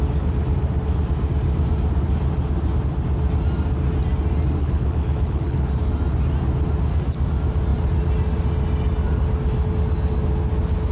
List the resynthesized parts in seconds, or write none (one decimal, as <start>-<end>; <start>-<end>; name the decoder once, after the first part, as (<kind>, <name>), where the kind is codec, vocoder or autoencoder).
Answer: 4.6-5.7 (codec, HILCodec)